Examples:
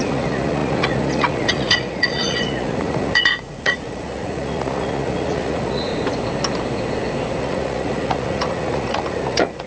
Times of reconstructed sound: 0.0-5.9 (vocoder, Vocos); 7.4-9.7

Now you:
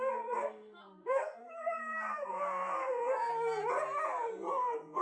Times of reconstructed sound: 0.0-3.3 (codec, SNAC); 4.5-5.0

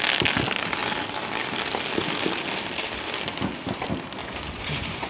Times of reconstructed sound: 4.2-5.1 (vocoder, Vocos)

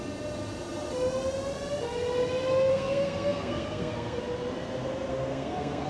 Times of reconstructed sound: 2.7-4.2 (codec, SNAC); 5.1-5.9